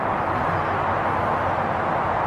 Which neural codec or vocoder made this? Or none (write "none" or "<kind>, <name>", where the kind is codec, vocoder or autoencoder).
none